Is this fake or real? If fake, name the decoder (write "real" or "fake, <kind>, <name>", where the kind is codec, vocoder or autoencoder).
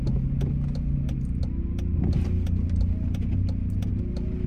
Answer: real